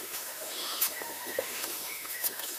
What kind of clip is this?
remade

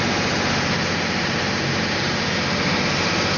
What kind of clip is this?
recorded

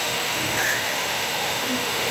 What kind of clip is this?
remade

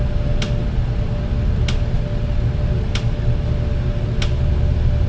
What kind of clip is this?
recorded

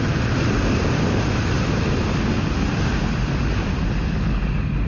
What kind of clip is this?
recorded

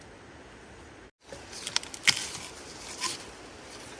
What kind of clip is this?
recorded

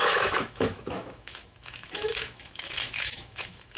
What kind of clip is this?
remade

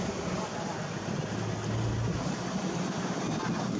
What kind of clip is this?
recorded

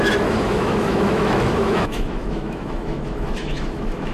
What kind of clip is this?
remade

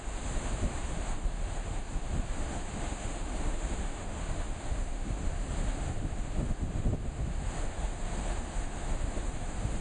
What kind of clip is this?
remade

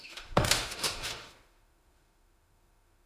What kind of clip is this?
remade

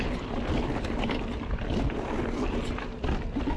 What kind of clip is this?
recorded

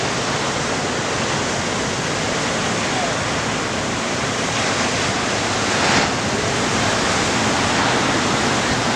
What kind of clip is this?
recorded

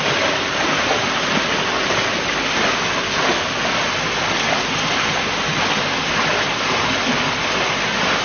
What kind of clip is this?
recorded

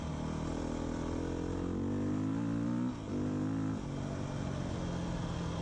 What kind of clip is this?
recorded